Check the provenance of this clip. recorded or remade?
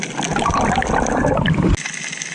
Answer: recorded